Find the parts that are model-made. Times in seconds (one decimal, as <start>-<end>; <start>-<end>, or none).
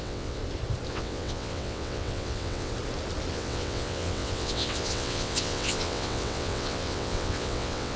0.0-0.4; 0.9-2.7; 3.3-8.0